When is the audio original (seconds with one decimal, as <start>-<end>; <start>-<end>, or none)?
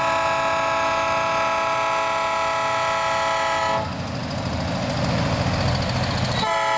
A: 0.0-6.8